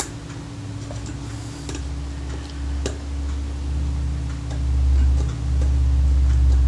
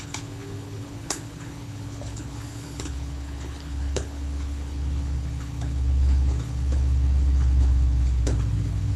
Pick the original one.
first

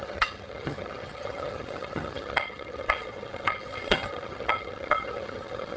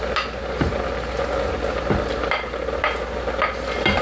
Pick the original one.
second